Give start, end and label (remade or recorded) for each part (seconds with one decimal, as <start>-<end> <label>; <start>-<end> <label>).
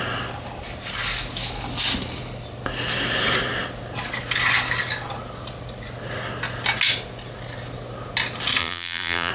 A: 0.0-8.6 recorded; 8.6-9.3 remade